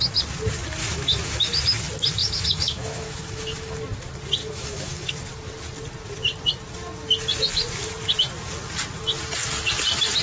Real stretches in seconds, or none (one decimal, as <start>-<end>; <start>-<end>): 0.0-0.8; 1.4-2.2; 3.8-4.4; 5.1-10.2